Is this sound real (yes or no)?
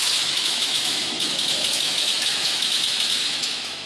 no